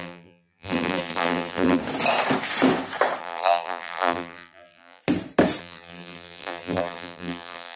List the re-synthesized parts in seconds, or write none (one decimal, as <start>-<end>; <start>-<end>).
0.0-1.8; 3.2-5.0; 5.6-7.8